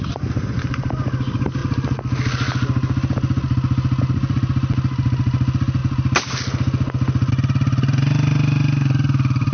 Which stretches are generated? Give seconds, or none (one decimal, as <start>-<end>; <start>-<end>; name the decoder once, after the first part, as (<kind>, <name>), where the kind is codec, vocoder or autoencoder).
none